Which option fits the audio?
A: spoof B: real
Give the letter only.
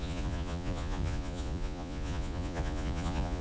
A